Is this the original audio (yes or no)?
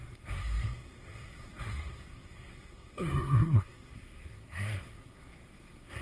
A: no